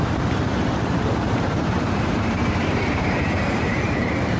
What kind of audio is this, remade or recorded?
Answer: remade